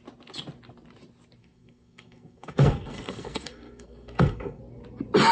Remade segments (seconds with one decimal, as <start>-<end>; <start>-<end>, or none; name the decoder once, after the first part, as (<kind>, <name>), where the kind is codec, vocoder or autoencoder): 1.4-4.6 (codec, SNAC)